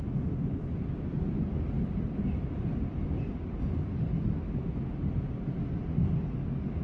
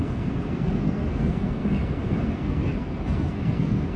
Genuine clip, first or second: first